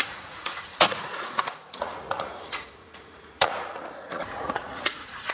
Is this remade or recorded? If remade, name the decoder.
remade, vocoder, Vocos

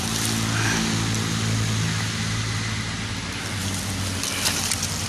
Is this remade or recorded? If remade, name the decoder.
recorded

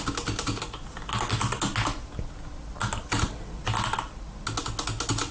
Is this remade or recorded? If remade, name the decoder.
recorded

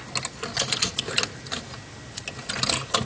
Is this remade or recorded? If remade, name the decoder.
recorded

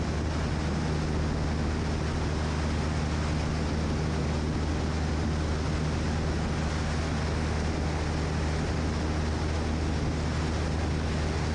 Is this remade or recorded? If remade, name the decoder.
recorded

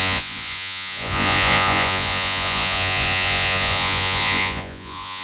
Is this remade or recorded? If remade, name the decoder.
remade, vocoder, Vocos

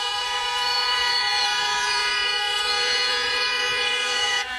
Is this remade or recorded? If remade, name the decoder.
remade, vocoder, Vocos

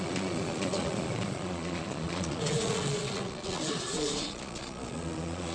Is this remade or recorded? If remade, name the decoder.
remade, vocoder, Vocos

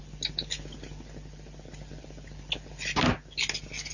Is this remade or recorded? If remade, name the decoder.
recorded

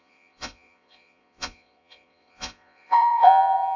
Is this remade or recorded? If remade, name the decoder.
remade, vocoder, Vocos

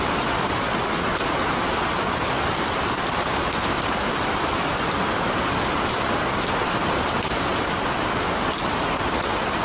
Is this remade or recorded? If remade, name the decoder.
recorded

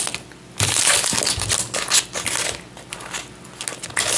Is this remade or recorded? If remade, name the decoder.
recorded